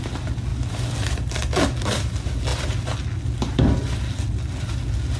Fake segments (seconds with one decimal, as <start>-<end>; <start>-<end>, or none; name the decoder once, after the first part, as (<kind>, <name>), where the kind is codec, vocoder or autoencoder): none